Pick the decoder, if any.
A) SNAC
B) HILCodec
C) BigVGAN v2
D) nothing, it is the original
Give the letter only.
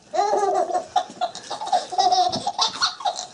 D